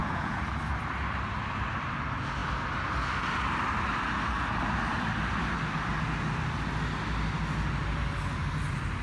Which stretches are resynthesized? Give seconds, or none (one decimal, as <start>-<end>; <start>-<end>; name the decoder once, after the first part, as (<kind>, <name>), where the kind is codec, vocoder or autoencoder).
0.0-0.5 (vocoder, Vocos)

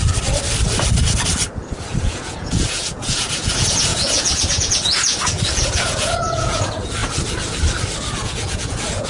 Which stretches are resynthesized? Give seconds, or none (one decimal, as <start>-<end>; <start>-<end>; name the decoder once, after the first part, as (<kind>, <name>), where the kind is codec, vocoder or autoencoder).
2.0-7.0 (vocoder, Vocos); 8.1-9.1

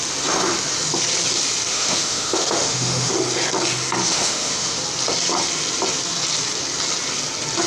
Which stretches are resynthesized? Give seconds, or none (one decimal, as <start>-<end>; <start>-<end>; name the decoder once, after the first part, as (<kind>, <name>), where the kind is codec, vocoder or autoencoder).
1.7-3.1 (autoencoder, DAC-VAE); 4.0-4.8